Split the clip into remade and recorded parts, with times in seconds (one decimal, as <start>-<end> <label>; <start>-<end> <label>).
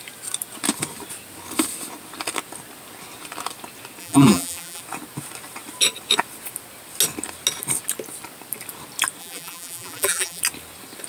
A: 0.0-4.0 recorded; 4.0-4.8 remade; 4.8-9.2 recorded; 9.2-10.4 remade; 10.4-11.1 recorded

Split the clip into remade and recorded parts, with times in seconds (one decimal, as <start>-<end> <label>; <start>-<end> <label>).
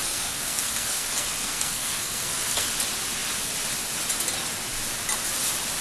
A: 0.0-2.7 remade; 2.7-5.8 recorded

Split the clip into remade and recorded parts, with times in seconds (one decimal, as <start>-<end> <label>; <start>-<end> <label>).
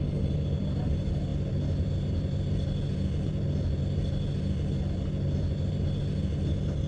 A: 0.0-6.9 recorded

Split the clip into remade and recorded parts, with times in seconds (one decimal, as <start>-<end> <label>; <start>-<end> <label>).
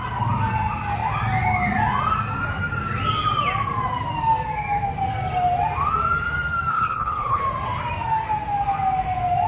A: 0.0-6.7 recorded; 6.7-7.4 remade; 7.4-9.5 recorded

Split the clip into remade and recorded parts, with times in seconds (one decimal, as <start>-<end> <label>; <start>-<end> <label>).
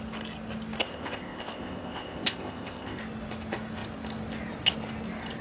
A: 0.0-0.8 recorded; 0.8-3.0 remade; 3.0-5.4 recorded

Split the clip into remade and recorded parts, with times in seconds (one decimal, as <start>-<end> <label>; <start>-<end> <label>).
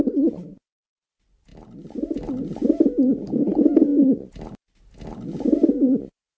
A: 0.0-6.4 recorded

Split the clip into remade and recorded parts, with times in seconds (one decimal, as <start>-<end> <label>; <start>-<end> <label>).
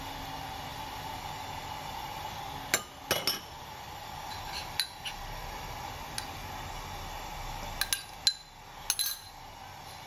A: 0.0-10.1 recorded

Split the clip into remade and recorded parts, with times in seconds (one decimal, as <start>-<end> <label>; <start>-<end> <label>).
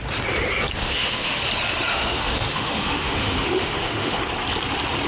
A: 0.0-0.8 recorded; 0.8-1.4 remade; 1.4-1.9 recorded; 1.9-4.2 remade; 4.2-5.1 recorded